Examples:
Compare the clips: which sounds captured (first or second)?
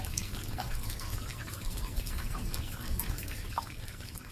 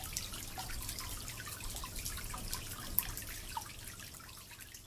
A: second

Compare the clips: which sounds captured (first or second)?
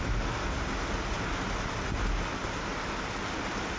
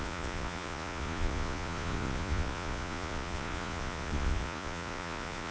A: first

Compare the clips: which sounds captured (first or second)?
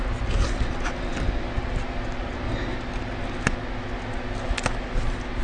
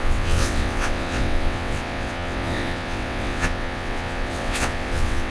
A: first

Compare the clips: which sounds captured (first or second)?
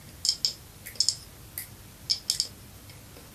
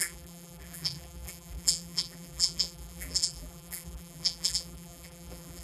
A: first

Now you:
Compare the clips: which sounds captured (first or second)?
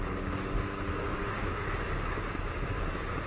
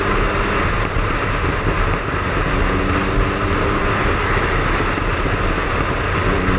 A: second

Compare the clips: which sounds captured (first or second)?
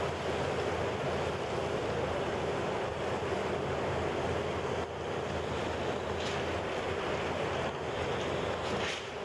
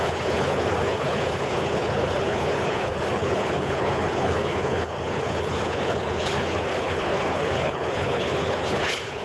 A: first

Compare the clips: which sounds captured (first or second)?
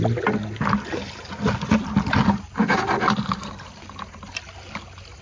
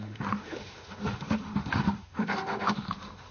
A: first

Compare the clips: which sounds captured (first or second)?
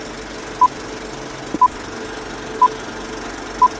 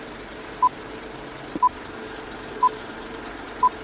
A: first